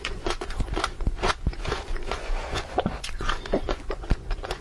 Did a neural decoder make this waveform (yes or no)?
yes